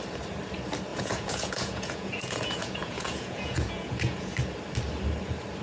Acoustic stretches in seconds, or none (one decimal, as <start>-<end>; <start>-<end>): 0.0-0.9; 4.3-5.6